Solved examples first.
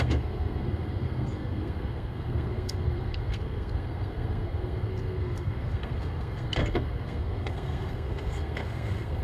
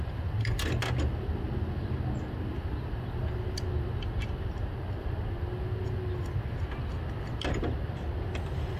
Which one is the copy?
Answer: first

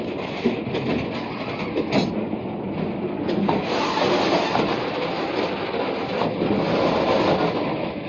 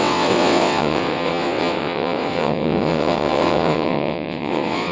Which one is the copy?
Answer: second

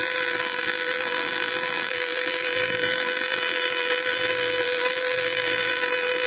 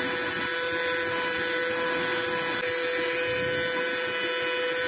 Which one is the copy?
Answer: first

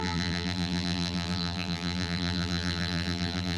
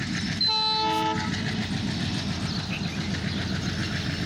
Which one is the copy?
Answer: first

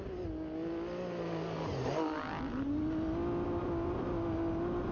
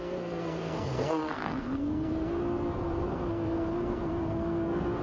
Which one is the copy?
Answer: second